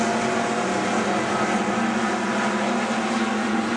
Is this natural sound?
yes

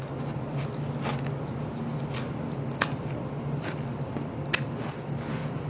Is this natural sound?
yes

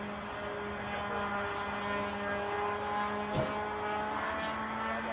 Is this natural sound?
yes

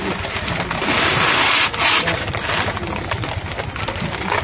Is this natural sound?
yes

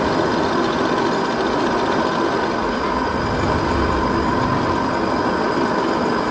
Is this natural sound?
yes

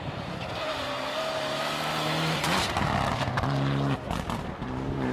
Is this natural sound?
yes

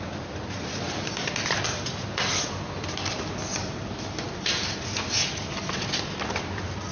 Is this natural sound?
yes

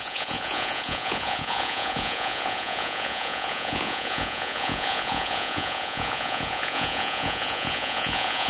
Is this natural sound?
no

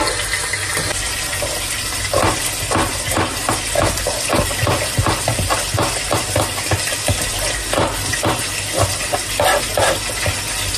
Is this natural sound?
yes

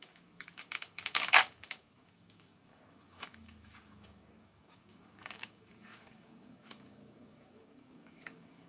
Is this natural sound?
no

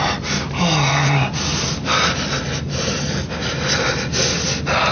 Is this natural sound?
yes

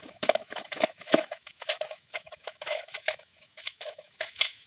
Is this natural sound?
no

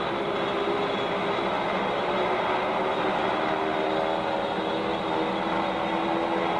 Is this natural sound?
yes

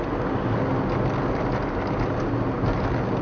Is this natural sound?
yes